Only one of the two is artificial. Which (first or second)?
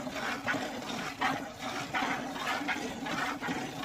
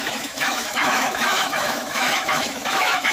second